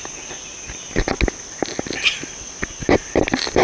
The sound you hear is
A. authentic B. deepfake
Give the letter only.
A